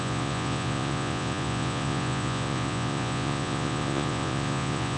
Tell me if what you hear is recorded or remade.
remade